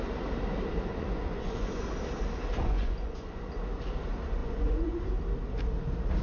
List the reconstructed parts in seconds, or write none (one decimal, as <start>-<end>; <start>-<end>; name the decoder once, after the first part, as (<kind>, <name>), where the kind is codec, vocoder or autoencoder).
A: 0.9-1.8 (vocoder, Vocos); 2.5-3.4; 4.4-5.1

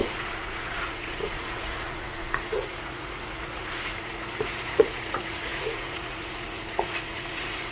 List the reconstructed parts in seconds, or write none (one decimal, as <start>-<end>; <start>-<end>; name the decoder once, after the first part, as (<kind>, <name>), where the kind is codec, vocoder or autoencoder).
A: 0.0-7.7 (vocoder, Vocos)

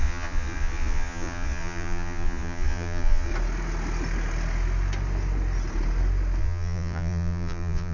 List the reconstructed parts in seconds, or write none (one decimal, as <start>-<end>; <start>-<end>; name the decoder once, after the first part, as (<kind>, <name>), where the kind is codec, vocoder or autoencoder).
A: 0.0-3.3 (vocoder, Vocos); 6.4-7.9

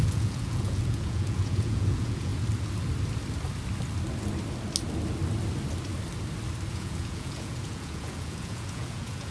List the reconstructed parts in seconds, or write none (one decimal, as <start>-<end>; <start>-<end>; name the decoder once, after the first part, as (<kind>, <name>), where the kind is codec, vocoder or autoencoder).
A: 0.0-2.3 (vocoder, Vocos); 6.7-9.3

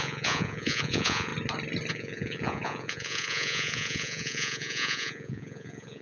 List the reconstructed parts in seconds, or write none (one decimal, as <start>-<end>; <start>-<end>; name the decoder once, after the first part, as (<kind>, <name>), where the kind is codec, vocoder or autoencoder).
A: 0.0-1.3 (vocoder, Vocos); 1.9-6.0